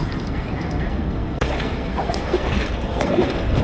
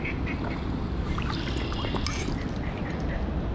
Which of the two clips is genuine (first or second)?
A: second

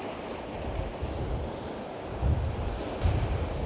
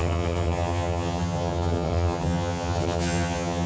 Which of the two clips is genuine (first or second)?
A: first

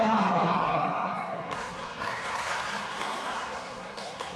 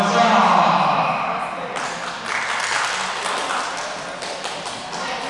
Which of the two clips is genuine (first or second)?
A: second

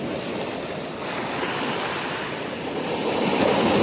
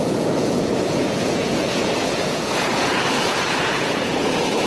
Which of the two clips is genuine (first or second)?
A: first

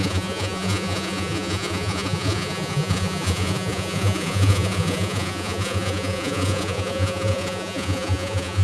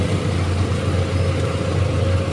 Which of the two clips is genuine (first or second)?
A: second